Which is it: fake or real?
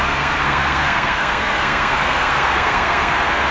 fake